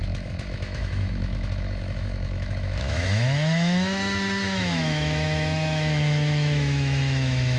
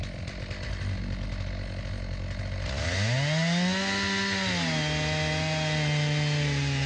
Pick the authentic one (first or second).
second